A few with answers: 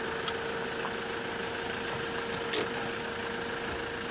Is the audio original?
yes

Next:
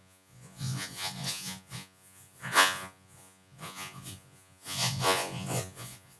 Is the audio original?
no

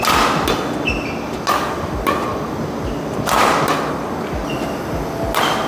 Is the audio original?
yes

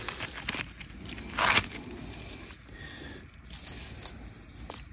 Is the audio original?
yes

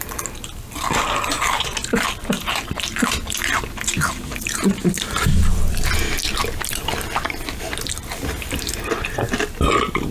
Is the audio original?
yes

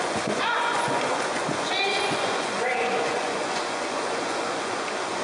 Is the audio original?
no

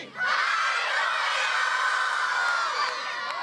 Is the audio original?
yes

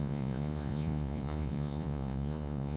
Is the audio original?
no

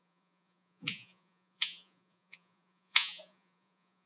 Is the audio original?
no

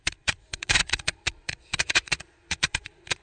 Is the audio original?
no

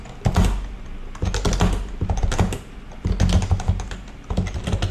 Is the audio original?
yes